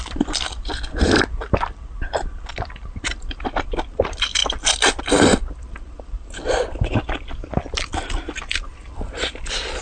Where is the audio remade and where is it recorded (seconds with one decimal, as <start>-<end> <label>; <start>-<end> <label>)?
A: 0.0-4.4 remade; 4.4-5.0 recorded; 5.0-9.8 remade

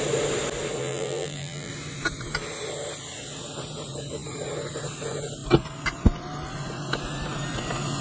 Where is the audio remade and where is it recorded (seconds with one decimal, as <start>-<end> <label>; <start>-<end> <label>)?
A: 0.0-0.8 recorded; 0.8-1.7 remade; 1.7-8.0 recorded

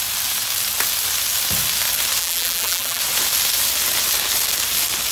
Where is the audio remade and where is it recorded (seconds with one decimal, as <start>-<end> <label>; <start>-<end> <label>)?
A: 0.0-2.2 recorded; 2.2-3.0 remade; 3.0-5.1 recorded

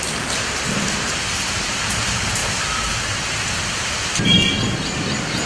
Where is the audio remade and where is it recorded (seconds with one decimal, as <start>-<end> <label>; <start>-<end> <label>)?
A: 0.0-1.3 recorded; 1.3-2.0 remade; 2.0-5.5 recorded

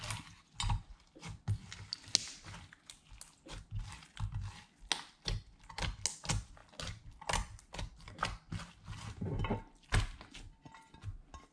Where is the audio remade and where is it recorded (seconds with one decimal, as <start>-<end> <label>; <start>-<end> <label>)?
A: 0.0-11.5 recorded

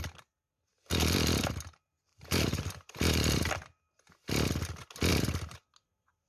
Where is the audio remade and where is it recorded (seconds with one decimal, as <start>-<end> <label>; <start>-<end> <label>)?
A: 0.0-2.1 recorded; 2.1-3.5 remade; 3.5-5.1 recorded; 5.1-5.6 remade; 5.6-6.3 recorded